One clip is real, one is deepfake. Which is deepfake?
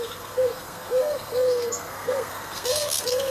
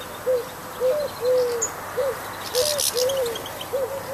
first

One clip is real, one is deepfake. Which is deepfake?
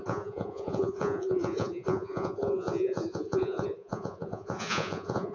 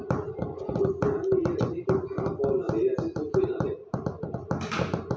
first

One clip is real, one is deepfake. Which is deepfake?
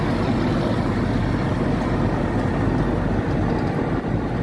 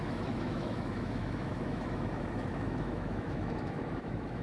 second